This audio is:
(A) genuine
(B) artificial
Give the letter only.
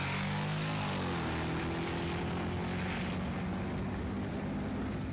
A